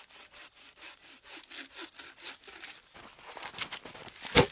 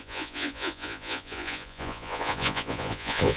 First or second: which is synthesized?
second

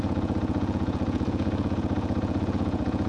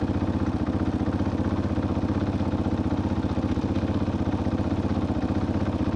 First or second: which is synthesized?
first